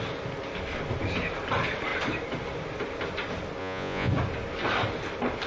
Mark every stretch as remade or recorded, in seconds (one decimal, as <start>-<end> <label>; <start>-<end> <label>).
0.0-3.6 recorded; 3.6-4.1 remade; 4.1-5.5 recorded